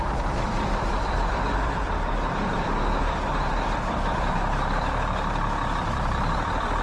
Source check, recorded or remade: remade